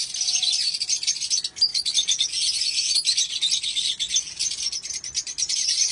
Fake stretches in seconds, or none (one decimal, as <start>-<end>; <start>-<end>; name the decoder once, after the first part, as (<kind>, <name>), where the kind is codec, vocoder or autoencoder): 0.6-1.1 (vocoder, BigVGAN v2); 4.4-5.9